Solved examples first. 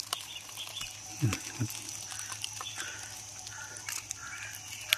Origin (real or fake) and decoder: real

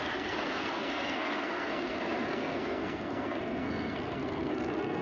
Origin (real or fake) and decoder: fake, codec, SNAC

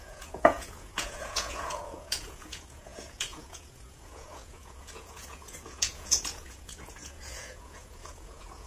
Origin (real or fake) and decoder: fake, vocoder, Vocos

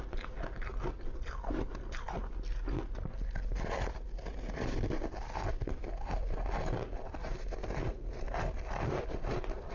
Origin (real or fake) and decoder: real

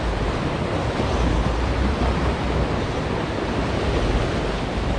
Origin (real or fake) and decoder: real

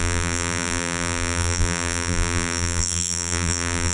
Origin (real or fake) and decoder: fake, vocoder, BigVGAN v2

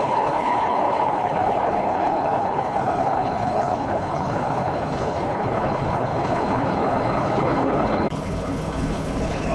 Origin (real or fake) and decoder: fake, codec, HILCodec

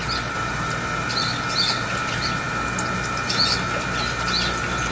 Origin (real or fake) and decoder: real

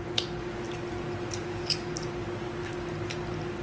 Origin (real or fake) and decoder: real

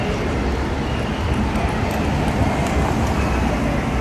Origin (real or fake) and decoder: real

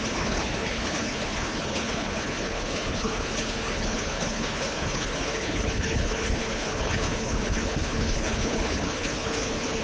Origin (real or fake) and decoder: fake, codec, HILCodec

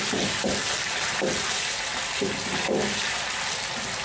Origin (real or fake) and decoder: real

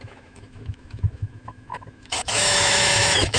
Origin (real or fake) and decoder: fake, autoencoder, DAC-VAE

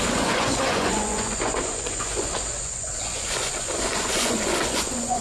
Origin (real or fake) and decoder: fake, vocoder, Vocos